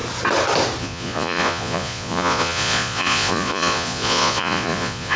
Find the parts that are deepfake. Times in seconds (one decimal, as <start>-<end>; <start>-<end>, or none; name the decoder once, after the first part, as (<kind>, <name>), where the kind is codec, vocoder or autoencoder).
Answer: 0.8-5.2 (vocoder, Vocos)